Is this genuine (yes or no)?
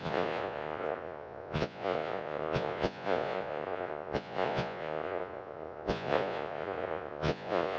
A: no